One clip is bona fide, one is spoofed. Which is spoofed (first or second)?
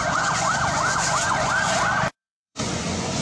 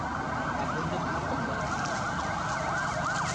first